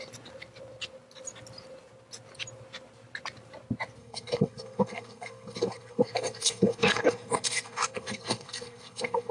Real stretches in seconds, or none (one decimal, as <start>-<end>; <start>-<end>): 0.0-4.0